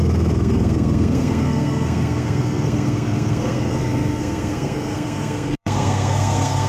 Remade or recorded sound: remade